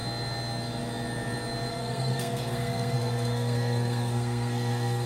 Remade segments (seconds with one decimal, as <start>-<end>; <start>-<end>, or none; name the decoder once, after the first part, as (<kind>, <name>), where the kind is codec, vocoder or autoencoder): 1.7-5.1 (codec, SNAC)